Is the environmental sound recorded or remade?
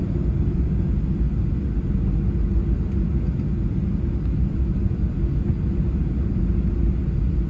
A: recorded